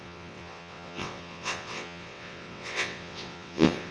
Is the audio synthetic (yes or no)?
yes